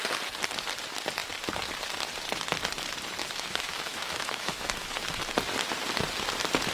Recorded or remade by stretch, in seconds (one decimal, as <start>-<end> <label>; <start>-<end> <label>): 0.0-3.2 recorded; 3.2-5.2 remade; 5.2-6.7 recorded